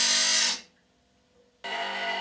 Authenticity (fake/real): real